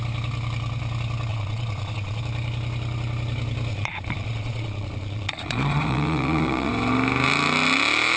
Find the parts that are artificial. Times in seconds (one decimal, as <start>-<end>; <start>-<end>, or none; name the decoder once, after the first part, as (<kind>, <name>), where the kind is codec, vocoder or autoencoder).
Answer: 1.3-2.2 (vocoder, Vocos); 3.7-6.7